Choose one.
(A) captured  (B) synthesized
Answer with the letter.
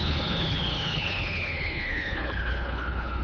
B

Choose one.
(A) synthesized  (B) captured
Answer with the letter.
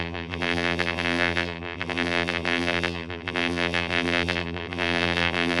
A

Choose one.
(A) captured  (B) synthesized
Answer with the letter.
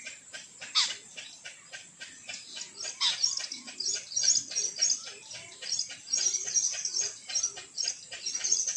A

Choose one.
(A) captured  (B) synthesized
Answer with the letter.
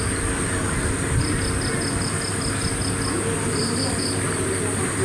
A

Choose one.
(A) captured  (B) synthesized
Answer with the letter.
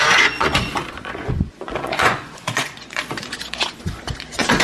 B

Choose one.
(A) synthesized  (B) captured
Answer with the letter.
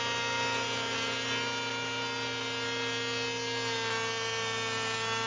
B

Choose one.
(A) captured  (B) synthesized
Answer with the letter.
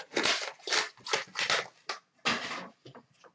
A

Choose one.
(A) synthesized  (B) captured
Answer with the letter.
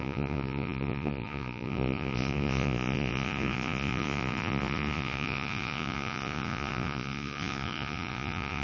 A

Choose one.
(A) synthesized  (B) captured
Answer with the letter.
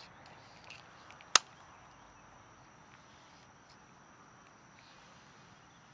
B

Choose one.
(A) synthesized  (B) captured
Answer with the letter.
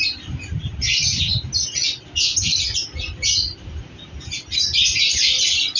B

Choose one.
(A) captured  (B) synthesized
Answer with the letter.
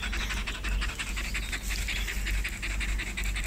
A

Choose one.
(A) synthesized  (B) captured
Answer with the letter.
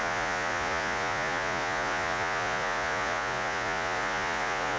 A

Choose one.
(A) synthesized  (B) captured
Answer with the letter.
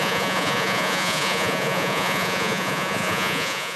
A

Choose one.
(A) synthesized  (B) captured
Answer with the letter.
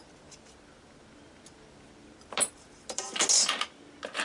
B